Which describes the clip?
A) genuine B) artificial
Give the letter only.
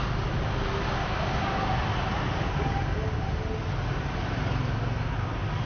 A